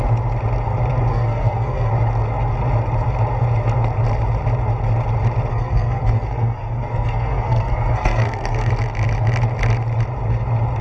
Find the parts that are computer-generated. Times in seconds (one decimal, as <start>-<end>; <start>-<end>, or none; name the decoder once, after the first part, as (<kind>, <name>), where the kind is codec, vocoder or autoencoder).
1.1-1.9 (codec, SNAC); 5.5-8.7